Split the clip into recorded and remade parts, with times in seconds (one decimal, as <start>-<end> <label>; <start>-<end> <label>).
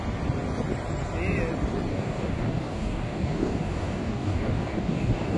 0.0-1.9 recorded; 1.9-5.4 remade